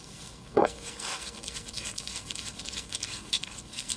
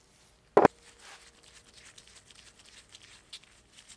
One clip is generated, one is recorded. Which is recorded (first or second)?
second